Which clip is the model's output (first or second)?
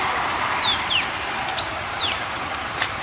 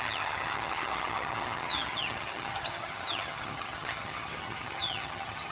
second